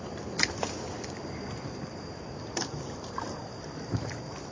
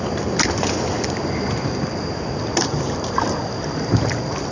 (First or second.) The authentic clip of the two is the second